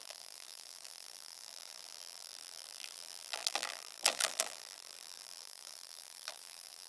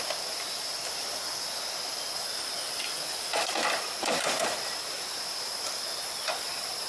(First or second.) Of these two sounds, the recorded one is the second